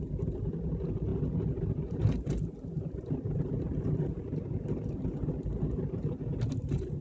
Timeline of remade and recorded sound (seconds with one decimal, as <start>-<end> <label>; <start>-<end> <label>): 0.0-7.0 recorded